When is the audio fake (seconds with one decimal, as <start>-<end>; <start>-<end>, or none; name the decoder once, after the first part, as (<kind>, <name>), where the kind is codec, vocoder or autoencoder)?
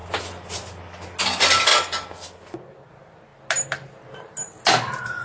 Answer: none